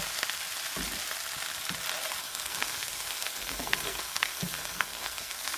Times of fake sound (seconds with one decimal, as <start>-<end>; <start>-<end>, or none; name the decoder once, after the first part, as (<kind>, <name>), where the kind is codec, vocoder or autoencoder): 2.2-5.6 (codec, SNAC)